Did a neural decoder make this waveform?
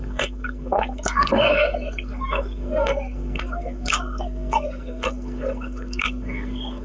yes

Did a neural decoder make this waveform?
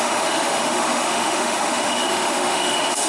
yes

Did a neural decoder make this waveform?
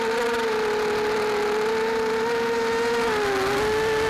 no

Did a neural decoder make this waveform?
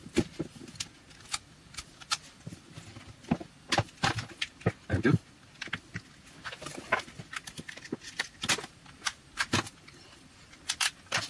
no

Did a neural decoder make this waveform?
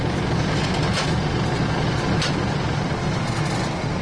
no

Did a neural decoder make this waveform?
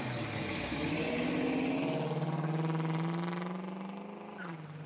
no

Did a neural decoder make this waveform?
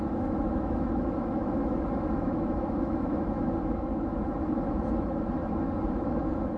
yes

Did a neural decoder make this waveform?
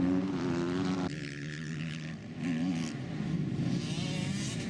no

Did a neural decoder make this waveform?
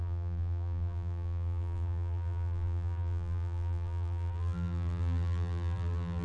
yes